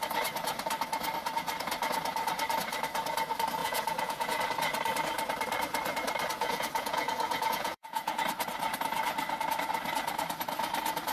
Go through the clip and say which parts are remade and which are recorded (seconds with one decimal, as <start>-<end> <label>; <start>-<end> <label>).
0.0-3.6 recorded; 3.6-4.4 remade; 4.4-6.3 recorded; 6.3-8.2 remade; 8.2-11.1 recorded